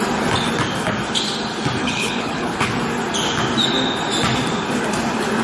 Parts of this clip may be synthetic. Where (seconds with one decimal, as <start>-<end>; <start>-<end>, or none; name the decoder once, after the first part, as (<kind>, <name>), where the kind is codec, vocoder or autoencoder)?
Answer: 1.8-2.7 (codec, HILCodec)